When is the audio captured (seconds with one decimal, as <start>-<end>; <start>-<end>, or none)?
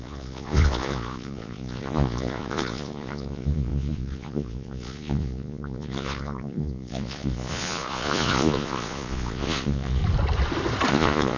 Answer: 10.0-10.9